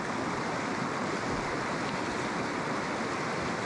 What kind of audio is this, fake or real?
real